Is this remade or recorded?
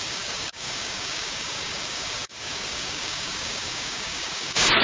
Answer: remade